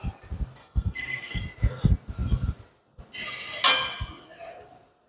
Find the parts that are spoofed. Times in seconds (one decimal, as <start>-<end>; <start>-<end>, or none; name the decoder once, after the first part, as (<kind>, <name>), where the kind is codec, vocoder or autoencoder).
0.6-1.4 (codec, SNAC)